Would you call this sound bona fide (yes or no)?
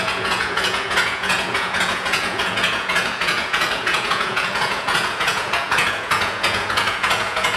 no